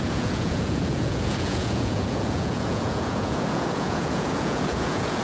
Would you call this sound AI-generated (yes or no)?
yes